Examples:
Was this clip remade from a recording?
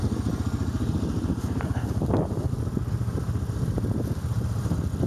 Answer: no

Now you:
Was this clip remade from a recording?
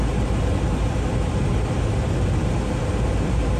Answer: no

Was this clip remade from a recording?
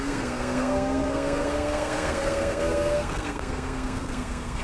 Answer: yes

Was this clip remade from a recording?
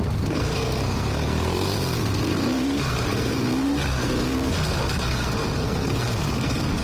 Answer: yes